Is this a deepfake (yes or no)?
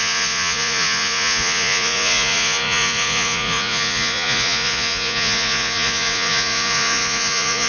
yes